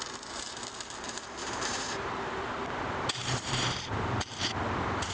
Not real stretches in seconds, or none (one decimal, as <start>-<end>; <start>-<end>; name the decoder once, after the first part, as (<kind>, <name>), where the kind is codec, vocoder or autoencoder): 1.4-2.4 (vocoder, BigVGAN v2); 3.2-4.5